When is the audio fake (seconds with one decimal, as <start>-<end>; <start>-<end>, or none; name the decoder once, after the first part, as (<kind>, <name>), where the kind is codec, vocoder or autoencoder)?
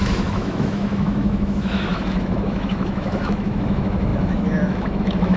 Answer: 0.0-5.4 (autoencoder, DAC-VAE)